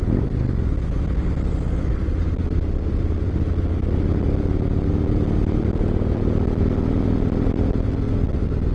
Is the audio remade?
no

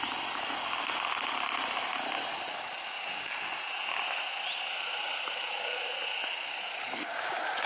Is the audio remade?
no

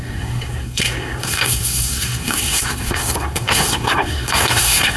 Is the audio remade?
yes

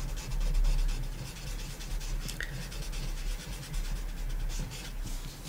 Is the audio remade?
no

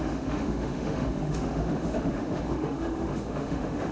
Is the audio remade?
yes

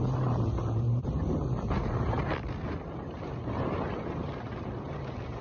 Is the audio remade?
yes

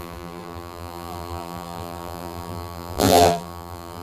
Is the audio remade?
yes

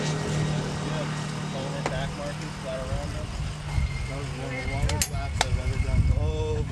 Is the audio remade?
no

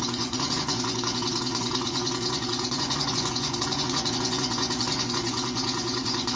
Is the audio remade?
yes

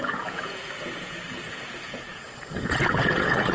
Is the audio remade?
yes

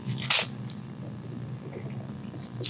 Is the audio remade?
no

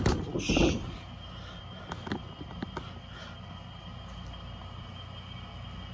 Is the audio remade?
no